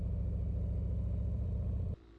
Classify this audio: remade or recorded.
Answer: remade